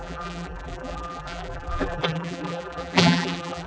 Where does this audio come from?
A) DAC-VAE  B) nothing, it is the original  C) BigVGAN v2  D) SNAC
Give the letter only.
C